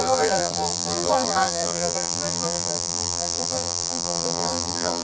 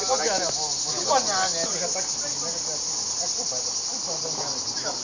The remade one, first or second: first